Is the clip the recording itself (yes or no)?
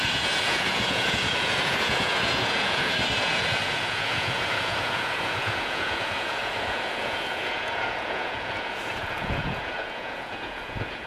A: no